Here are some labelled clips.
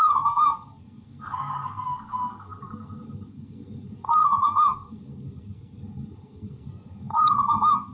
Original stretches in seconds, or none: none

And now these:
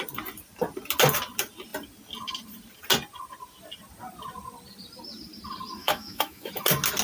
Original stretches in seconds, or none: 0.0-5.8; 6.5-7.0

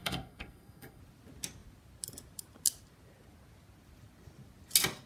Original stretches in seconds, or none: 1.0-5.1

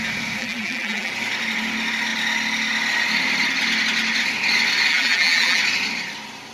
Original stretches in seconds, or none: 0.0-0.4; 1.1-4.9; 5.6-6.5

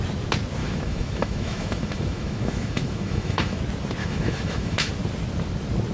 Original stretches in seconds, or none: 0.0-0.6; 3.6-4.0; 4.9-5.9